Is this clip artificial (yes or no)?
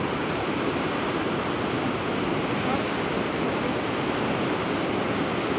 no